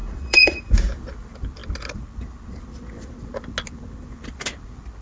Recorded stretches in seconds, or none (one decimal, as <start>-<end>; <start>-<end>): 0.6-5.0